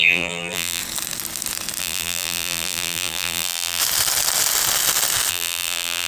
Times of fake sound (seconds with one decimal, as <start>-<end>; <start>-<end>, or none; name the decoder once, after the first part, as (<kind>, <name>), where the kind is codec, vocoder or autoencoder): 0.0-0.8 (vocoder, BigVGAN v2); 1.8-3.8; 5.3-6.1